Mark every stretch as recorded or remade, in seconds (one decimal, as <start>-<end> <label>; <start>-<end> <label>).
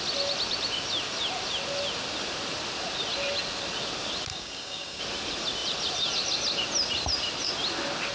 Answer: 0.0-4.3 recorded; 4.3-5.0 remade; 5.0-8.1 recorded